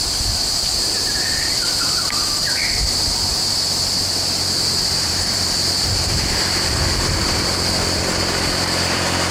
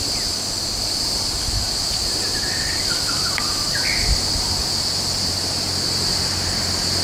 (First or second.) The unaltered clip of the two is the second